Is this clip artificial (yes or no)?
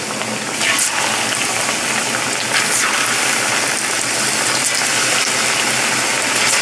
no